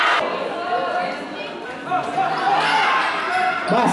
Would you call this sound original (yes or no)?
yes